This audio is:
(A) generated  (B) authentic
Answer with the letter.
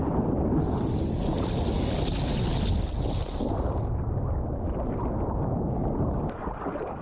B